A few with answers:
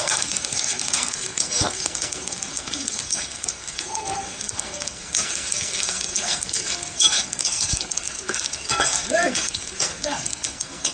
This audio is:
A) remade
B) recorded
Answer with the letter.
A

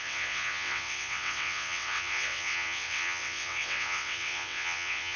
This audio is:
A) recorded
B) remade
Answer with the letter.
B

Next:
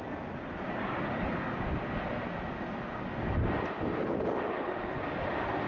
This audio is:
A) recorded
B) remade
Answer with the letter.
A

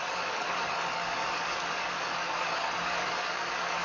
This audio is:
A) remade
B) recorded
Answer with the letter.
A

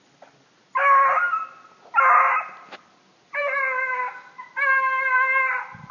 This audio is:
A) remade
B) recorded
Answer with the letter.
B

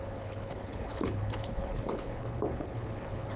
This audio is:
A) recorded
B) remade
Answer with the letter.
B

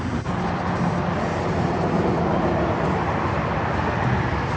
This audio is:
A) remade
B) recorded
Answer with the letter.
B